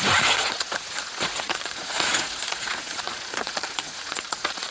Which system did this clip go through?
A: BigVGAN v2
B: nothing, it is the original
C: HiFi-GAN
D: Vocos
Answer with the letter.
D